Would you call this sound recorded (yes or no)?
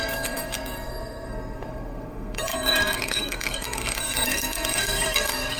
no